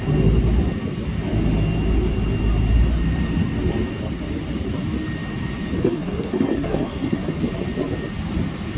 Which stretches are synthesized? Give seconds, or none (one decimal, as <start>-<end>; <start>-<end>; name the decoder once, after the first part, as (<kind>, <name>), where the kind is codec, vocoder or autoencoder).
5.8-7.4 (codec, SNAC)